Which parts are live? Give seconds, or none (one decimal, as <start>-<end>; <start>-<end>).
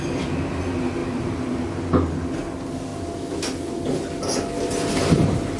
0.0-1.0; 1.7-5.6